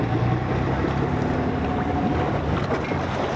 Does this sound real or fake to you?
real